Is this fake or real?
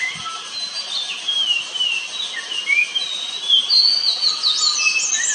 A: real